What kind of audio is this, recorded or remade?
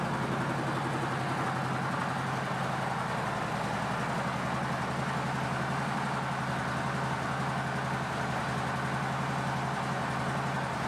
recorded